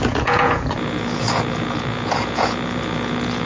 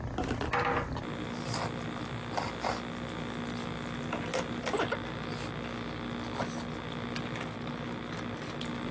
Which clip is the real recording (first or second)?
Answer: second